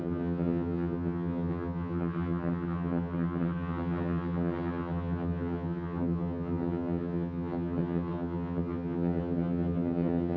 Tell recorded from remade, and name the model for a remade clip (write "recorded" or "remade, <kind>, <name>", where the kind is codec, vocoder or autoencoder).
remade, vocoder, HiFi-GAN